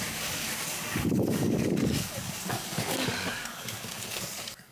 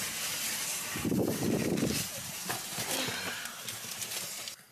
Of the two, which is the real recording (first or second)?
second